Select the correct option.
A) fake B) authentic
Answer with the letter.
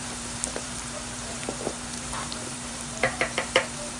A